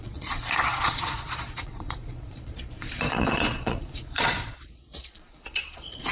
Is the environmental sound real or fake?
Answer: fake